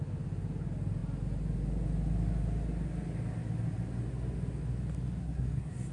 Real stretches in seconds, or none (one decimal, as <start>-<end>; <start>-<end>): 0.0-5.2